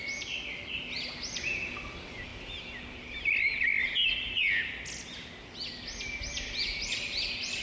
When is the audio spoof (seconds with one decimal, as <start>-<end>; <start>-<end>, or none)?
none

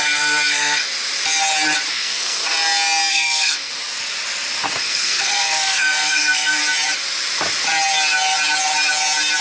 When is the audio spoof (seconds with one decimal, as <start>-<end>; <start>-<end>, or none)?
0.0-0.9; 1.9-2.4; 3.1-3.7; 4.8-6.6

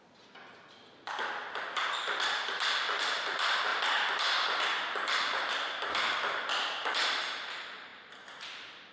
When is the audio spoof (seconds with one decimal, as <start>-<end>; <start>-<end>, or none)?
7.9-8.9